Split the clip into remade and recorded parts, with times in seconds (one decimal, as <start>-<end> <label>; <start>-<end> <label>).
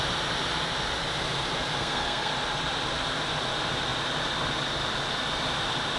0.0-1.8 recorded; 1.8-2.3 remade; 2.3-6.0 recorded